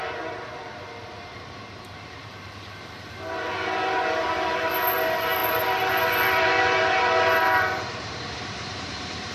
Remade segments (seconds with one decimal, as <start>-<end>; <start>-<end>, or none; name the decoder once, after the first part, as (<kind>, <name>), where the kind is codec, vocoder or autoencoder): 0.0-9.3 (vocoder, BigVGAN v2)